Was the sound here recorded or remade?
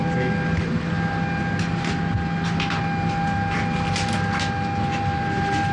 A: recorded